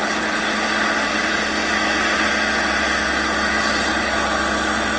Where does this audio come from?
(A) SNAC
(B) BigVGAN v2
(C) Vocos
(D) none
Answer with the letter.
D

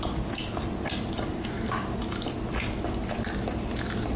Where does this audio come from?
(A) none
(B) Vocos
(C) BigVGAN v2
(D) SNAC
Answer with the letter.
A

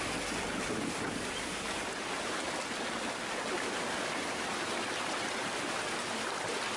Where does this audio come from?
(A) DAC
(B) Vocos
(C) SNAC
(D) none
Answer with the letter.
D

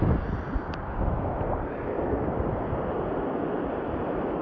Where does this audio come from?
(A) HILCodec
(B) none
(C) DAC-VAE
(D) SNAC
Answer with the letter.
B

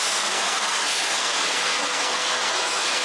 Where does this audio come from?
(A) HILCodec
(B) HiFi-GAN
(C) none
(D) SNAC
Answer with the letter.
D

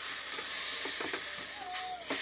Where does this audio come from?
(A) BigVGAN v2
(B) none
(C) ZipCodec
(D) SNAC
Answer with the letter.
B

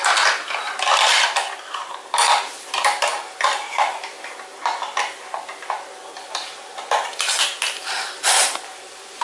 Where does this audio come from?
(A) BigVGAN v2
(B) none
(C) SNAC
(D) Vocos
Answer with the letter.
B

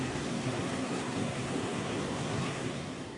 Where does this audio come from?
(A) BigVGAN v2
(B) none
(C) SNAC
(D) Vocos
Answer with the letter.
C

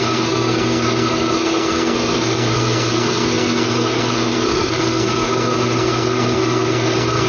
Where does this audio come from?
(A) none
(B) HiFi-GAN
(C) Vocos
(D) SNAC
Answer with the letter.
D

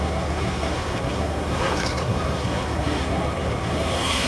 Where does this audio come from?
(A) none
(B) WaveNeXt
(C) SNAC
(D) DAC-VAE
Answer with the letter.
C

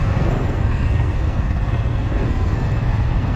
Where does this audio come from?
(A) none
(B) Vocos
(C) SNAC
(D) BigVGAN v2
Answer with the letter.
C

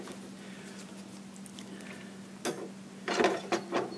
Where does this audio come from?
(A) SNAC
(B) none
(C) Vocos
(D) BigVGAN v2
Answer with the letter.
B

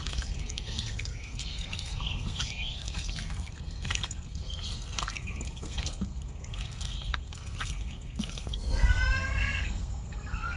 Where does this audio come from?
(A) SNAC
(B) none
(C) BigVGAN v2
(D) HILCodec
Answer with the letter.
A